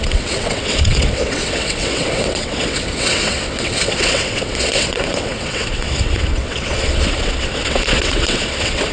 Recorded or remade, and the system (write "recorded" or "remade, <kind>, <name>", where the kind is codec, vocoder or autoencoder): remade, vocoder, WaveNeXt